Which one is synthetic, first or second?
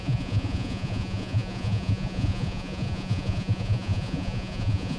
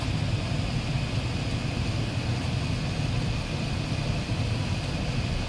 first